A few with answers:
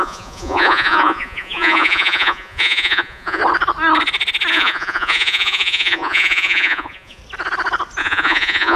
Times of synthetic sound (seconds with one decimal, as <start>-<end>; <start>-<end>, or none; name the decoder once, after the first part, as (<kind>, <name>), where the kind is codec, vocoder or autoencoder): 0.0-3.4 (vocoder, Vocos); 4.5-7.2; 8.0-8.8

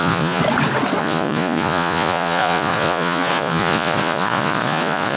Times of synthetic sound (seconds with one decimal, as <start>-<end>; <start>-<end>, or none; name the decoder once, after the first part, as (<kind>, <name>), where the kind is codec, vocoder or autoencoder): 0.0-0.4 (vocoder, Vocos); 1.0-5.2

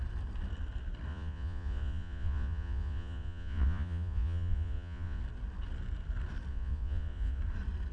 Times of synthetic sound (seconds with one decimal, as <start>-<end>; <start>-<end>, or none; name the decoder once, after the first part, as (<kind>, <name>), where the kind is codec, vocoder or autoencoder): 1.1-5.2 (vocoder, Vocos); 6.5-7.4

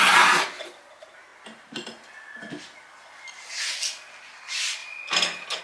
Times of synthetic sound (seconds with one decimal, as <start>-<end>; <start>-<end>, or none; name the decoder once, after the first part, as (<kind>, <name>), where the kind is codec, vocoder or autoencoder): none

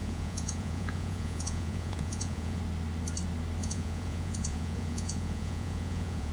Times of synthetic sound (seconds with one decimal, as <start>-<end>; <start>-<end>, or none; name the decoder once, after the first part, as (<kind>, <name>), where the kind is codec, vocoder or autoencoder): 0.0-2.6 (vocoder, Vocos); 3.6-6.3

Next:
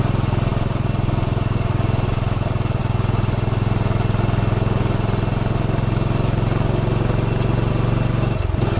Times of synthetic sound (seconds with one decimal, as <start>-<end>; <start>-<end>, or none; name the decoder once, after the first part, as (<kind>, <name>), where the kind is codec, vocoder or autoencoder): none

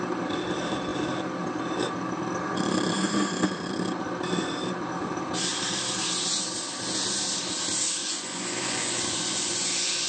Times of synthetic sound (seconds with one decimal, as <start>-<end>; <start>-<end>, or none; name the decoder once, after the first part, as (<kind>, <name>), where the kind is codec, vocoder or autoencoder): 8.0-10.1 (vocoder, Vocos)